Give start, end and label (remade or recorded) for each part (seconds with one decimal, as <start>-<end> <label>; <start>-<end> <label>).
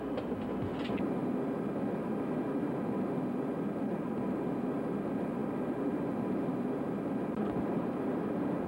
0.0-8.7 recorded